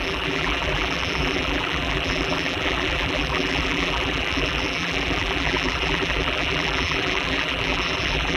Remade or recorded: remade